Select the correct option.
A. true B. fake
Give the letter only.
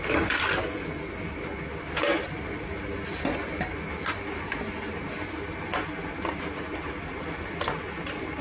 A